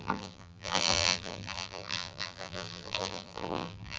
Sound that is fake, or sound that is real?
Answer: fake